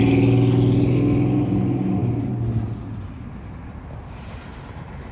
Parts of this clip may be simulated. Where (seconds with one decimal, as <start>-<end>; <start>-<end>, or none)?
none